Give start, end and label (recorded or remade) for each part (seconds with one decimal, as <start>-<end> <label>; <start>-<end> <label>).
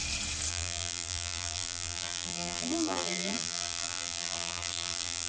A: 0.0-0.5 recorded; 0.5-5.3 remade